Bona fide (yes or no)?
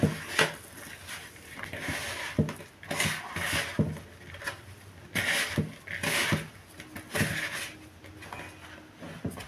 yes